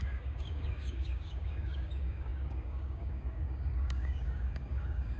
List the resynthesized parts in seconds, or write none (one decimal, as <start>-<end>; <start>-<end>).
0.0-5.2